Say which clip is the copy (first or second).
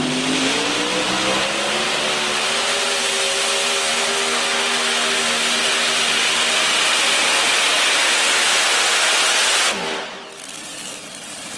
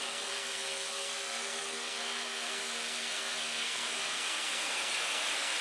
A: second